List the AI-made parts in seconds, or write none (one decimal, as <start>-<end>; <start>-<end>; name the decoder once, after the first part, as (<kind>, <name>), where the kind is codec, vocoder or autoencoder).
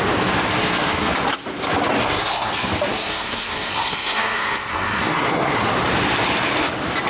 0.5-1.1 (codec, SNAC); 2.0-2.5; 2.9-5.6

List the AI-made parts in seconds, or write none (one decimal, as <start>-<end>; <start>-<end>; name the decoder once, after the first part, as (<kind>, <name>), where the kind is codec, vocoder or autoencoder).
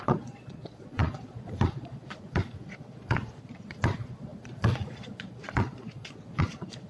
0.0-6.9 (vocoder, Vocos)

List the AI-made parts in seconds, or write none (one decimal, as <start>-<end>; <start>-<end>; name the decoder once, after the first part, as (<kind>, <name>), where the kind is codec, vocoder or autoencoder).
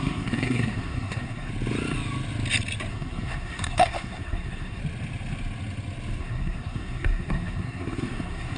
0.0-1.5 (codec, SNAC); 2.9-4.8; 6.2-8.6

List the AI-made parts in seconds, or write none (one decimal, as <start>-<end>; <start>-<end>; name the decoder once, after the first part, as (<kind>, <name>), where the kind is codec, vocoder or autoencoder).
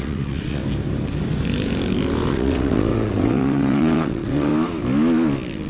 0.0-0.6 (vocoder, WaveNeXt); 2.3-4.5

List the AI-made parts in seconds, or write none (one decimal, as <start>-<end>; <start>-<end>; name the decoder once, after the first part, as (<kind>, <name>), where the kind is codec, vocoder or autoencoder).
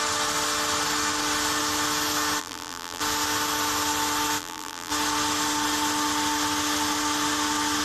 2.4-3.0 (vocoder, BigVGAN v2); 4.4-4.9